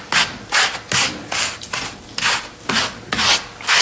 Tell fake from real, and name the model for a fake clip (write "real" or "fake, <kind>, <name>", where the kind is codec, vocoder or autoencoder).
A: real